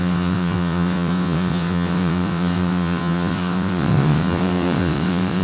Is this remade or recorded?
remade